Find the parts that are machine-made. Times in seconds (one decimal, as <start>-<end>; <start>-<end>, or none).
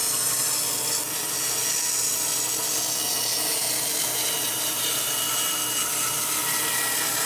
none